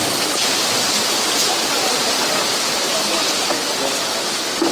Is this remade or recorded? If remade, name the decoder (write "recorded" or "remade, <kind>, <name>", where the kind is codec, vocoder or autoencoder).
recorded